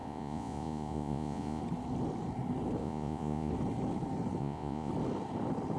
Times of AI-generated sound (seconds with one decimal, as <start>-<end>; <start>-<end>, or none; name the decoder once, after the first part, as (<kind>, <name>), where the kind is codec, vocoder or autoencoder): 0.0-1.6 (vocoder, Vocos); 2.8-3.5; 4.4-4.9